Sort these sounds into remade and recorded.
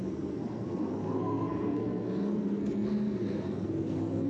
remade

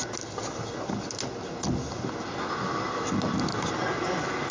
recorded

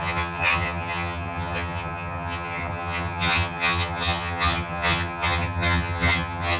remade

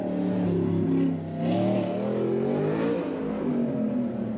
recorded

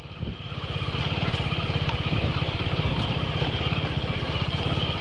recorded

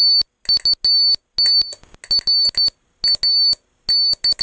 recorded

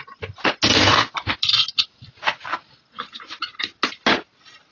recorded